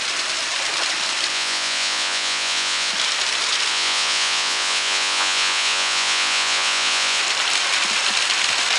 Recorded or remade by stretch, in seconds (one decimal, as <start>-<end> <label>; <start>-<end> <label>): 0.0-1.3 recorded; 1.3-2.9 remade; 2.9-3.7 recorded; 3.7-7.2 remade; 7.2-8.8 recorded